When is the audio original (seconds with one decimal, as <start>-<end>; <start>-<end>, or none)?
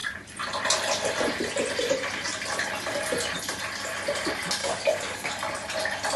0.0-4.6; 5.3-6.2